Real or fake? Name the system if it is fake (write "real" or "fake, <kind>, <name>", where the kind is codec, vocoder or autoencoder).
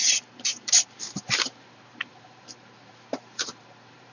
fake, vocoder, BigVGAN v2